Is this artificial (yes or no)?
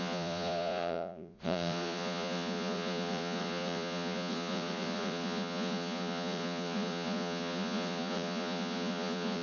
yes